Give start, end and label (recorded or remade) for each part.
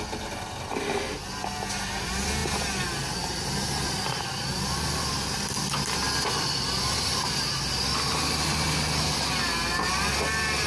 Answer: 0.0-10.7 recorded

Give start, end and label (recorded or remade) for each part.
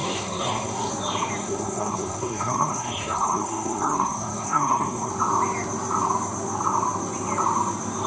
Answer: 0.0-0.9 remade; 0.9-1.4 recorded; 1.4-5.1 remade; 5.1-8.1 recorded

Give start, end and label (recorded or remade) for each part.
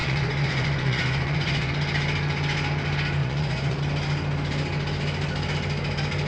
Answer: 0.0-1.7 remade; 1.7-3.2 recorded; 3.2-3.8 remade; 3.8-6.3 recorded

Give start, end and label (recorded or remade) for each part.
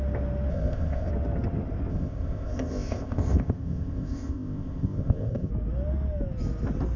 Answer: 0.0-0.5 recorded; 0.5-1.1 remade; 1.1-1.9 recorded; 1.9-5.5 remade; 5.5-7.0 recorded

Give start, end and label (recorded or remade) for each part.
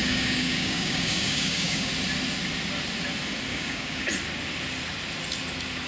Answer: 0.0-1.9 remade; 1.9-3.5 recorded; 3.5-4.1 remade; 4.1-5.9 recorded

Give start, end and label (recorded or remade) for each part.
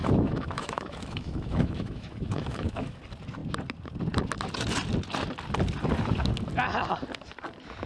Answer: 0.0-3.0 remade; 3.0-7.9 recorded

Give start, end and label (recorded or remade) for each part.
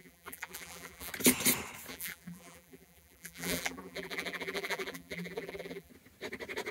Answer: 0.0-1.1 remade; 1.1-1.9 recorded; 1.9-5.9 remade; 5.9-6.7 recorded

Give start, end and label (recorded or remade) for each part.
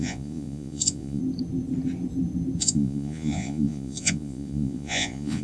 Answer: 0.0-1.2 remade; 1.2-2.6 recorded; 2.6-5.4 remade